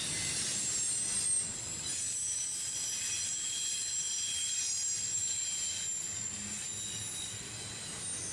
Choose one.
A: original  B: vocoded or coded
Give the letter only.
A